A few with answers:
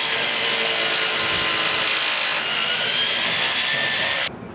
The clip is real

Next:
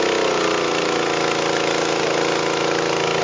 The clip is real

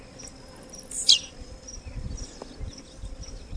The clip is real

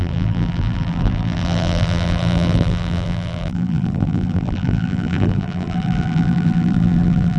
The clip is fake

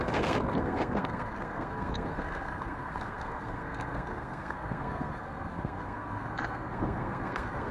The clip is fake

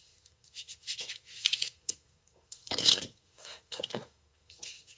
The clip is fake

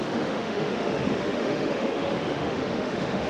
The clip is fake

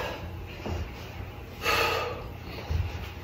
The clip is real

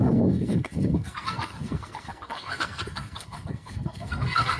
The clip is fake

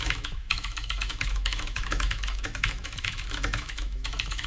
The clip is fake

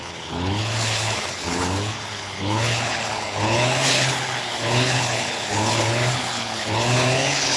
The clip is fake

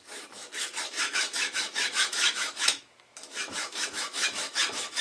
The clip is fake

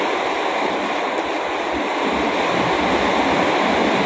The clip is real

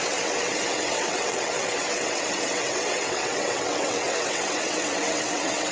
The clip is fake